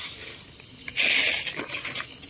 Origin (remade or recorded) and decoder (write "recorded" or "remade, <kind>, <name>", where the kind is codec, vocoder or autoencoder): recorded